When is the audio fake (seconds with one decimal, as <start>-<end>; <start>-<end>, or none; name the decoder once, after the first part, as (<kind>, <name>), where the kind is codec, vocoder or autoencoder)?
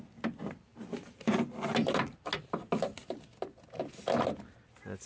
none